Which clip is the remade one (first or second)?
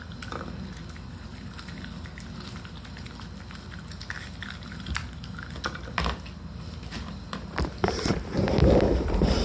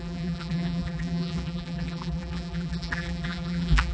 second